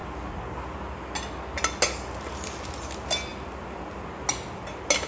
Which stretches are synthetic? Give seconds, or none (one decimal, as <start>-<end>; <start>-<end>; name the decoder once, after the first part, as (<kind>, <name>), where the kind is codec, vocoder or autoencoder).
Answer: none